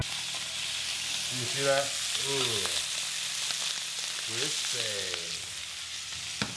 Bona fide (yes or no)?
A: yes